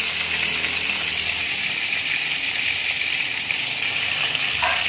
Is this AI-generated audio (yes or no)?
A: no